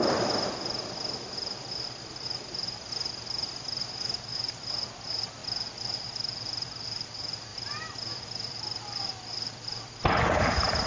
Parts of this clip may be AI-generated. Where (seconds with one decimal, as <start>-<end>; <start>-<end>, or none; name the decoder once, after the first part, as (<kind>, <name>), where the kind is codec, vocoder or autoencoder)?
5.4-7.1 (vocoder, BigVGAN v2); 7.5-9.8